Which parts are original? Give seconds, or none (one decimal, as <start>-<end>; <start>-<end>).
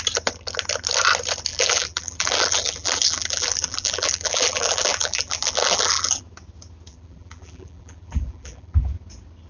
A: 0.0-1.5; 6.2-6.9; 8.9-9.5